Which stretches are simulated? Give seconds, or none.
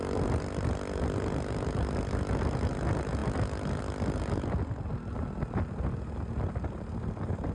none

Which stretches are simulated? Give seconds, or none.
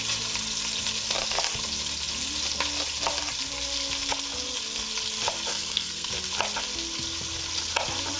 5.5-6.1 (codec, SNAC)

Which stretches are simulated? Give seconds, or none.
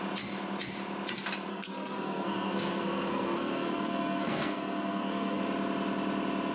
1.5-5.4 (codec, SNAC)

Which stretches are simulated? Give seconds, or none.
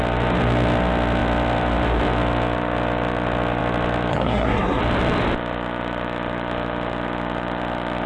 4.1-4.8 (codec, SNAC)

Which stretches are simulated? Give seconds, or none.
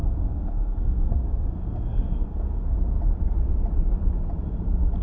0.0-3.0 (codec, SNAC)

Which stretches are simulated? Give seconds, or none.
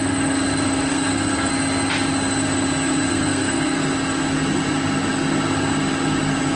0.9-1.5 (codec, SNAC); 3.1-3.8